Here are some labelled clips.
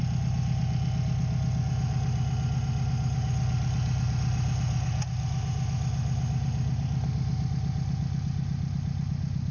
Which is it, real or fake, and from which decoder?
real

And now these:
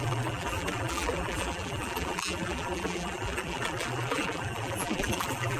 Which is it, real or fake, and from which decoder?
fake, vocoder, BigVGAN v2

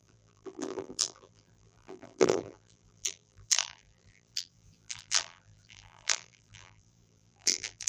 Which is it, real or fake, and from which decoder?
fake, vocoder, BigVGAN v2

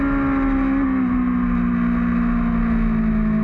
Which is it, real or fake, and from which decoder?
real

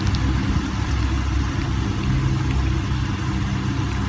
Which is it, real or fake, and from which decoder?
real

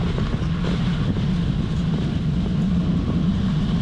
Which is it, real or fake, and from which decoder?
real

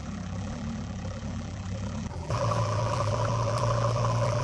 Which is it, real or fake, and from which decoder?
fake, vocoder, BigVGAN v2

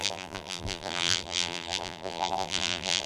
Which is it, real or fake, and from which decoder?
fake, vocoder, BigVGAN v2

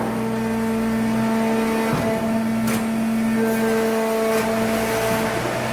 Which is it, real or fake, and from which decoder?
real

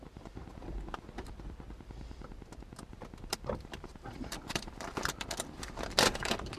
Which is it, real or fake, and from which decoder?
fake, vocoder, BigVGAN v2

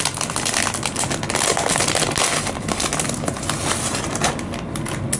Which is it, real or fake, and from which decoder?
real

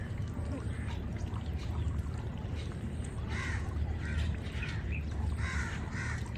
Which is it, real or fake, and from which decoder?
fake, vocoder, BigVGAN v2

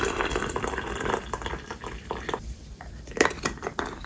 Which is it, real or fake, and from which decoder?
fake, vocoder, BigVGAN v2